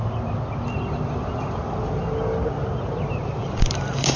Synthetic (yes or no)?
no